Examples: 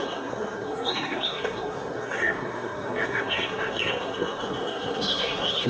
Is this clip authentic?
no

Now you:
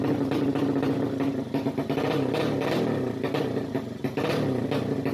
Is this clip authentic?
yes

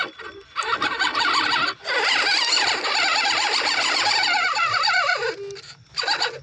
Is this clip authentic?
yes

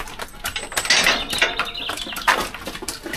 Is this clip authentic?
yes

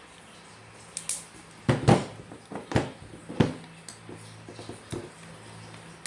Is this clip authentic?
yes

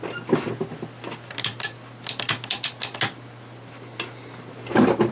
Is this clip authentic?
yes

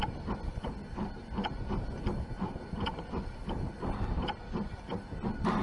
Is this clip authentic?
yes